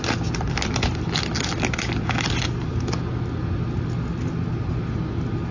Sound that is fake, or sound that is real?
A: real